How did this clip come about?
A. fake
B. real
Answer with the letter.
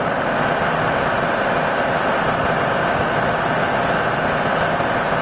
B